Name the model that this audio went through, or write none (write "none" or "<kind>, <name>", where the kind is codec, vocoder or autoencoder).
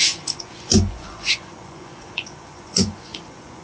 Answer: vocoder, Vocos